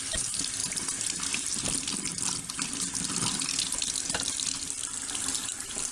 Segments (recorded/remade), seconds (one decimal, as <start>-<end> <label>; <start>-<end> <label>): 0.0-0.6 remade; 0.6-1.3 recorded; 1.3-2.1 remade; 2.1-5.4 recorded; 5.4-5.9 remade